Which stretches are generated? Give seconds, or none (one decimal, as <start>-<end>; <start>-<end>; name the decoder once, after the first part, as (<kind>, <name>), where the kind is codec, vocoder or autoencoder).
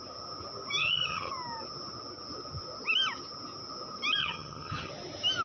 0.8-1.3 (vocoder, HiFi-GAN); 4.2-4.9